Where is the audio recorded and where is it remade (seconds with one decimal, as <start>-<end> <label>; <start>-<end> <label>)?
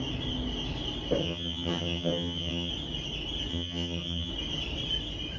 0.0-1.2 recorded; 1.2-2.7 remade; 2.7-3.5 recorded; 3.5-4.3 remade; 4.3-5.4 recorded